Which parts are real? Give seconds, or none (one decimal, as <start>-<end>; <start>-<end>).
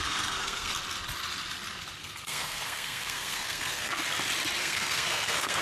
0.7-2.0; 4.0-4.6